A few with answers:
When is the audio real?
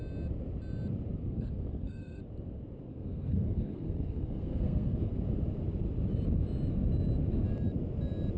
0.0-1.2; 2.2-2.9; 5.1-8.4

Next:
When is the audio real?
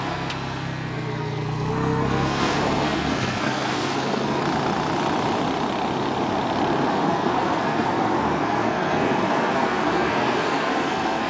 4.4-6.9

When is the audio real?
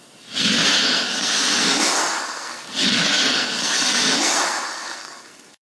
none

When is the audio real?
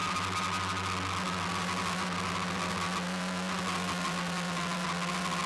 0.0-5.5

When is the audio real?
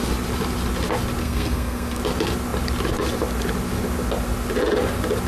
0.0-1.2; 2.0-5.3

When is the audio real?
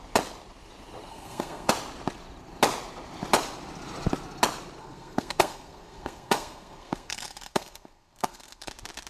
0.0-1.1; 1.7-4.8; 8.7-9.1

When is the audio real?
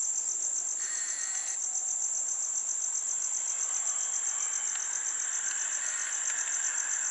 0.0-7.1